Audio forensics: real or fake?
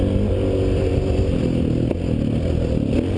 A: real